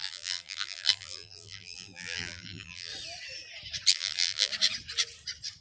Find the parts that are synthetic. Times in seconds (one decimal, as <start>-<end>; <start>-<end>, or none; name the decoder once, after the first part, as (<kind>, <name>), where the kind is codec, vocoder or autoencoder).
0.0-2.9 (vocoder, BigVGAN v2); 3.9-4.5